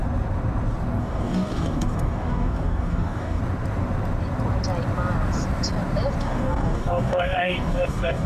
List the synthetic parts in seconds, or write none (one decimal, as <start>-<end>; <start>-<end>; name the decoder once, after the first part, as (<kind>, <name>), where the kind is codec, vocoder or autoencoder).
1.0-3.4 (codec, DAC); 6.2-8.3